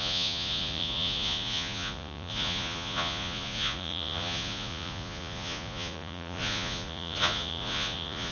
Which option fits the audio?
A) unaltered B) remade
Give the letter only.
B